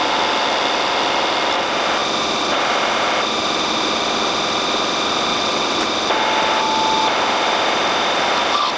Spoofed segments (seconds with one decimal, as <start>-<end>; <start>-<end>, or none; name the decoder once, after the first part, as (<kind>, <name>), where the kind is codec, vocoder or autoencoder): 5.3-5.8 (vocoder, WaveNeXt)